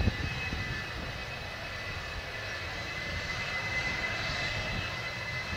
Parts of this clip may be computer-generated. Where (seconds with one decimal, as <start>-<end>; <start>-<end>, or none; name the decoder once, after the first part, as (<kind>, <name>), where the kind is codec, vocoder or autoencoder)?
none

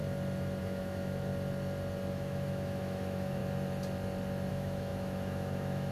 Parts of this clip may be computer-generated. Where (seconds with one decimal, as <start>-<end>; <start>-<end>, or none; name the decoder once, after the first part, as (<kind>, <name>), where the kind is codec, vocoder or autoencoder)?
0.6-1.3 (autoencoder, DAC-VAE); 2.1-3.4; 4.5-5.9

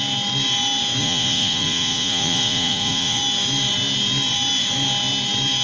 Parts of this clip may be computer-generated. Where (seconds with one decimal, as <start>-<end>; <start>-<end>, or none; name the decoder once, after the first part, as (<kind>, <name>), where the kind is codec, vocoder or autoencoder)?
1.0-3.2 (vocoder, Vocos)